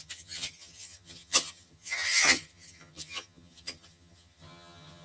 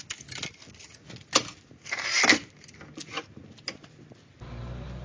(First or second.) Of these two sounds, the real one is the second